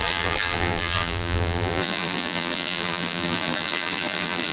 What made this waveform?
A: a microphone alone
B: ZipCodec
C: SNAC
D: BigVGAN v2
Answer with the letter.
D